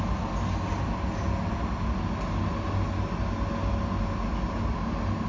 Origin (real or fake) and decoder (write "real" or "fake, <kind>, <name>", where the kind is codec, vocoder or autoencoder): real